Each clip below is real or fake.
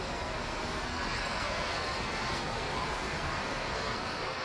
fake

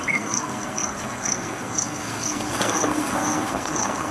fake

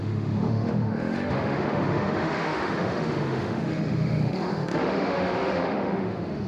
fake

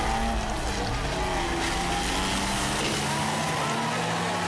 real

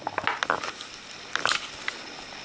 real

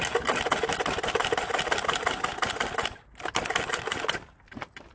real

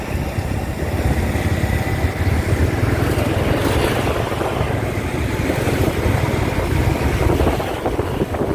real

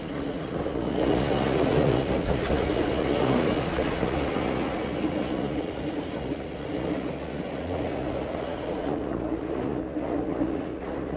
fake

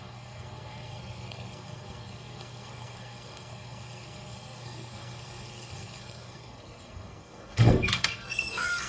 fake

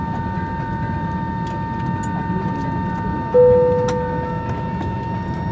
real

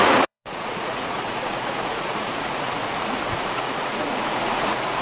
fake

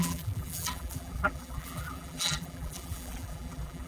fake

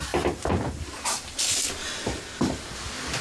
real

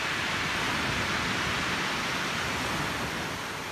real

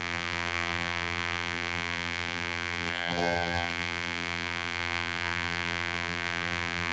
fake